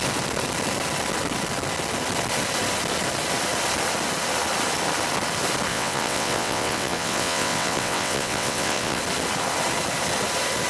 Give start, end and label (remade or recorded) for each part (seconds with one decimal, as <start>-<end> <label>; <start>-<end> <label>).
0.0-5.7 recorded; 5.7-9.0 remade; 9.0-10.7 recorded